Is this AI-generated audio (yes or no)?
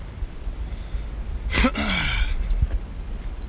no